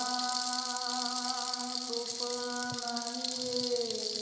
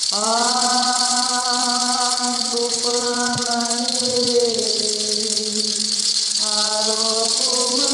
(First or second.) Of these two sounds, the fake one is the second